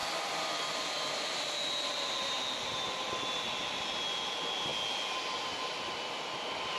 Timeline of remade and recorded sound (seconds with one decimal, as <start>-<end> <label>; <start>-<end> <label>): 0.0-6.8 recorded